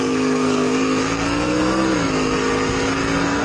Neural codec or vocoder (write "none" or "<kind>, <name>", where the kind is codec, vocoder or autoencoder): codec, SNAC